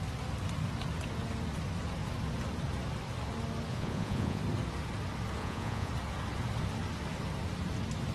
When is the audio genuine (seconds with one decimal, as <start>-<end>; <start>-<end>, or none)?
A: 0.0-3.7; 4.4-5.4; 5.9-8.1